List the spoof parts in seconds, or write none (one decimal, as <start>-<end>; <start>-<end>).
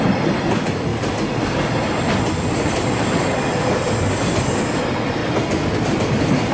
none